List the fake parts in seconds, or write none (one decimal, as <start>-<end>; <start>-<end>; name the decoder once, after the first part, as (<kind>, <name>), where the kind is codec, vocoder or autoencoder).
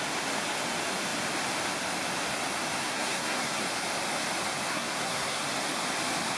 2.8-3.6 (codec, SNAC); 4.7-5.4